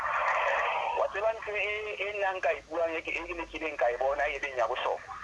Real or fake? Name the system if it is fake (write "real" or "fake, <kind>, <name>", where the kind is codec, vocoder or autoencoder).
real